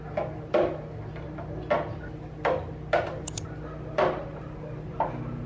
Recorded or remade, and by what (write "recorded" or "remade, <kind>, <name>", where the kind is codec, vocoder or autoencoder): recorded